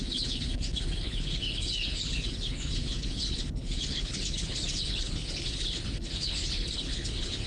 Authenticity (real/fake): fake